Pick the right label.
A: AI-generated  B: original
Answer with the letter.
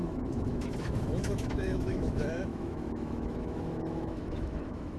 A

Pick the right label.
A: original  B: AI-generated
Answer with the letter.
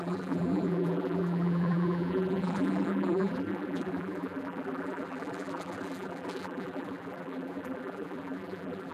B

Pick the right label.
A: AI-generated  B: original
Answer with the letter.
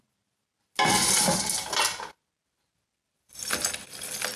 B